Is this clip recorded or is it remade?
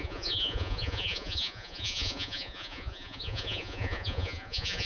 remade